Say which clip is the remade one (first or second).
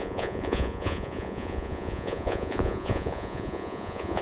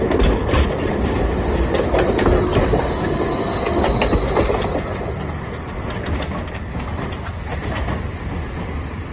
first